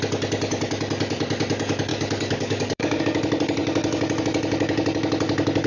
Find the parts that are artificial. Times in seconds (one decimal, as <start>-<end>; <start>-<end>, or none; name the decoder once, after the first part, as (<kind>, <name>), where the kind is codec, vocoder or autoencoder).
1.9-3.0 (codec, DAC)